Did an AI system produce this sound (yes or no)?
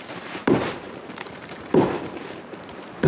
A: yes